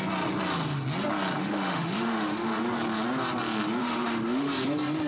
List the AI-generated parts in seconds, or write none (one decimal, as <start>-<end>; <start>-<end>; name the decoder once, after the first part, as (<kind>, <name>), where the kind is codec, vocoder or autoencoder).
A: 1.4-2.6 (autoencoder, DAC-VAE); 3.8-4.5